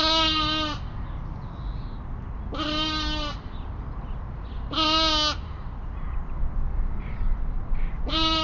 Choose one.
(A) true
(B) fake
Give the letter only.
A